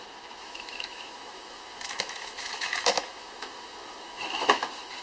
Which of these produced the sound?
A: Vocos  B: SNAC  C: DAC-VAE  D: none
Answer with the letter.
C